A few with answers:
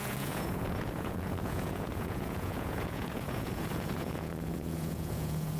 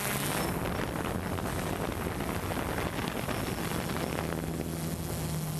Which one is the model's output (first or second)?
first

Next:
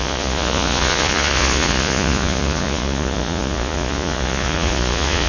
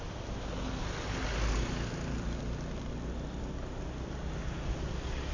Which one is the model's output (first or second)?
first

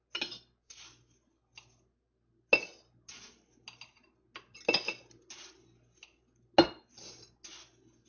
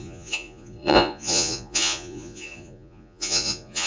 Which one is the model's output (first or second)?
second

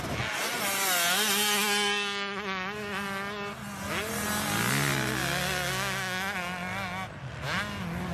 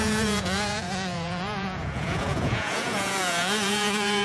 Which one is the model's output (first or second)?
second